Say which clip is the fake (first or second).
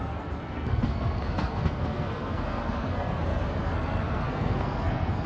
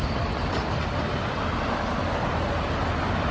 first